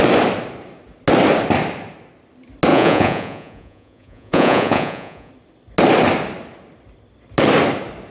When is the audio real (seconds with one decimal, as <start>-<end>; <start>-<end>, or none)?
0.0-2.7; 5.3-8.1